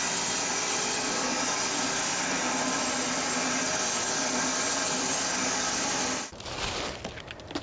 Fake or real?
real